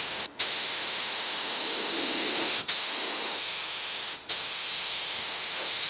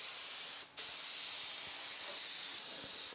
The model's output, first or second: first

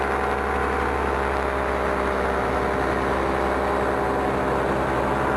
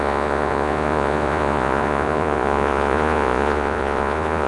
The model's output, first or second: second